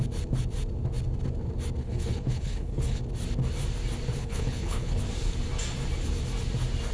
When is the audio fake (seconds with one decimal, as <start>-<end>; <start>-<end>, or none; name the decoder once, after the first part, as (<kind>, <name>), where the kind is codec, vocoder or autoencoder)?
1.8-3.0 (codec, HILCodec); 4.2-5.0